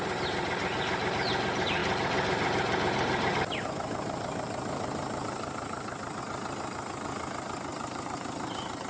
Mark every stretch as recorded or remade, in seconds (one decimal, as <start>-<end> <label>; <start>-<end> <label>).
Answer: 0.0-1.8 recorded; 1.8-6.2 remade; 6.2-7.7 recorded; 7.7-8.9 remade